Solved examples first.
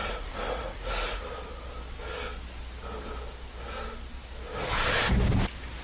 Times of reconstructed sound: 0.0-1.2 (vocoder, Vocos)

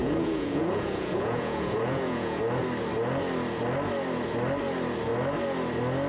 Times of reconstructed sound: 0.0-2.4 (vocoder, Vocos)